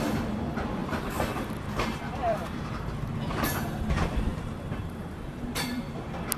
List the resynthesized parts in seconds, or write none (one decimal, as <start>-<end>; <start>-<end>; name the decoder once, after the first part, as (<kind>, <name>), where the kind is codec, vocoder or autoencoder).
0.8-2.9 (vocoder, BigVGAN v2); 4.3-6.0

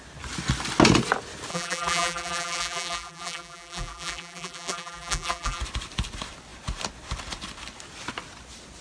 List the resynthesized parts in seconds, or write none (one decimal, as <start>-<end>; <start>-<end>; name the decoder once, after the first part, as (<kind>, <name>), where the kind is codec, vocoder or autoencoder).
1.5-5.6 (vocoder, BigVGAN v2)

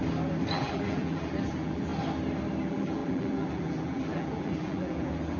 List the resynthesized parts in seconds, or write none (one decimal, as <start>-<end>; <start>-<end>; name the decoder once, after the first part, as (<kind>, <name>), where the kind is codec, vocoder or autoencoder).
0.5-1.9 (vocoder, BigVGAN v2); 2.6-5.4